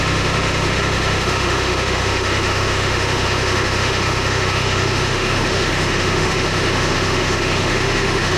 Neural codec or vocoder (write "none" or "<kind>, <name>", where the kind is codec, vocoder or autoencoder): autoencoder, DAC-VAE